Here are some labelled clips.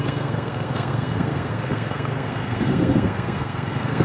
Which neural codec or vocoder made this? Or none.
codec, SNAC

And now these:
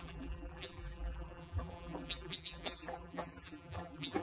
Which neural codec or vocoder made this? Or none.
vocoder, BigVGAN v2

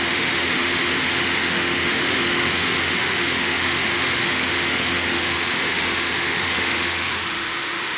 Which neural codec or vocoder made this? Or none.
autoencoder, DAC-VAE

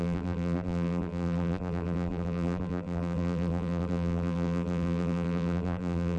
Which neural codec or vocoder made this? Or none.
vocoder, BigVGAN v2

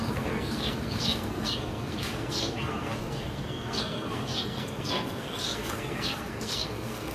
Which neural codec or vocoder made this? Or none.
codec, SNAC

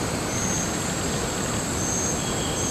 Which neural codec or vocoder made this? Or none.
none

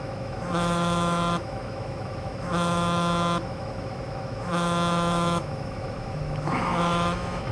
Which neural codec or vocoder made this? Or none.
autoencoder, DAC-VAE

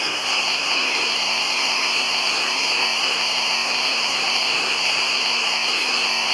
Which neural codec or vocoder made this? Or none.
codec, SNAC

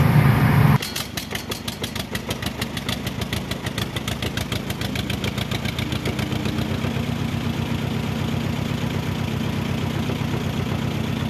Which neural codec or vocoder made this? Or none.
none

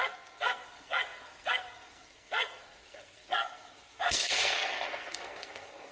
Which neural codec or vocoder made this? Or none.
codec, SNAC